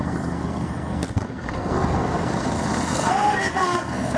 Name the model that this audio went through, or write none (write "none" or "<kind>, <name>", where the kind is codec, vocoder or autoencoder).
codec, SNAC